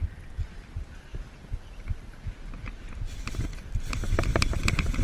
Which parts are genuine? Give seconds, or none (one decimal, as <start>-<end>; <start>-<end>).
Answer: 0.0-5.0